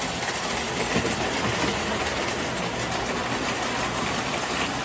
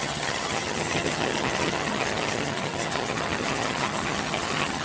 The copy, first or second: second